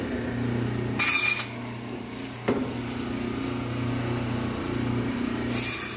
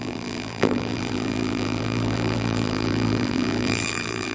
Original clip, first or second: first